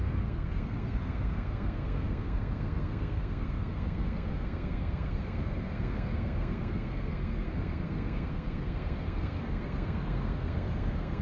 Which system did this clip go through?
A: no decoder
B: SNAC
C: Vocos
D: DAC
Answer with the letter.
B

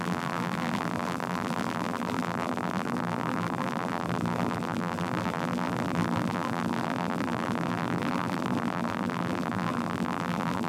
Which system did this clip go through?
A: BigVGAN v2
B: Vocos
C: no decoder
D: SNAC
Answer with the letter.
A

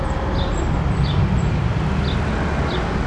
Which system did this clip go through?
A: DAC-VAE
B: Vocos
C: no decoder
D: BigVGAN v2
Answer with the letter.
C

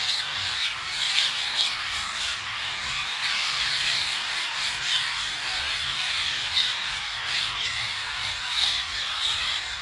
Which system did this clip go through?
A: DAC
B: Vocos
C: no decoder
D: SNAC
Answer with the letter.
A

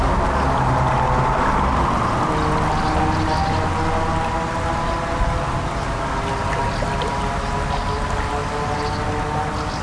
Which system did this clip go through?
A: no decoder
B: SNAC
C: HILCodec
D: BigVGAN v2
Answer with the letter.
A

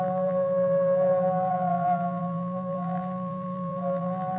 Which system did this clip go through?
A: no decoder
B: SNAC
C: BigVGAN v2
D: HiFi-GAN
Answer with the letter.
C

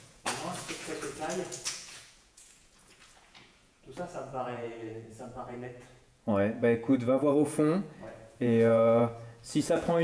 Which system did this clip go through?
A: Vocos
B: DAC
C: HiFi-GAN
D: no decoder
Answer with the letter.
A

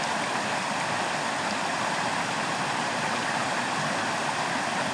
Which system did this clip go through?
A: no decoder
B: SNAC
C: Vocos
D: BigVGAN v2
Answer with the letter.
A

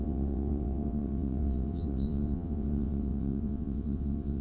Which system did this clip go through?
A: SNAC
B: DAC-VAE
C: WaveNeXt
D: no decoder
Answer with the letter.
C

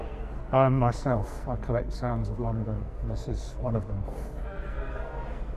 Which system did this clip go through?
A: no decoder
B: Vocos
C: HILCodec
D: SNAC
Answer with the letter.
D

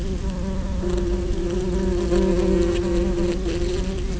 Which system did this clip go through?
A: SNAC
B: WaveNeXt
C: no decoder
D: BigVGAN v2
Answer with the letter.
C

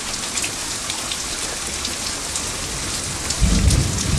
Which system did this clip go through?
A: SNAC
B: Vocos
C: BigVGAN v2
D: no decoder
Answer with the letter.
D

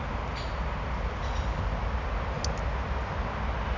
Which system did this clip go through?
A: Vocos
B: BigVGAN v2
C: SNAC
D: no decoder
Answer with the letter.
D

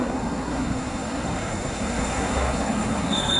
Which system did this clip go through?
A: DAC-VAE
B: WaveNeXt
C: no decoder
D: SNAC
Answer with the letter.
D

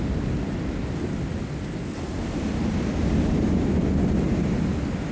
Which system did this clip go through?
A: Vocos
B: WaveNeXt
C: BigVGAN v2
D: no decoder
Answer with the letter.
D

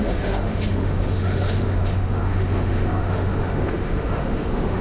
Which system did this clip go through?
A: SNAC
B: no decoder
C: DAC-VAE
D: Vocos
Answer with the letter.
C